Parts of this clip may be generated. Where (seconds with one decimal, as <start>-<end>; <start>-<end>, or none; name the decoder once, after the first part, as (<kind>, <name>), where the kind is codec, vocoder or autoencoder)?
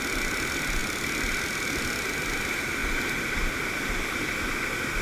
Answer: none